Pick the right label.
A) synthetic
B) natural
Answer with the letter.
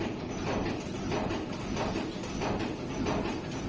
B